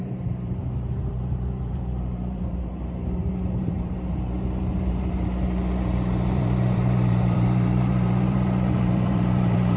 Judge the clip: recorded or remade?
remade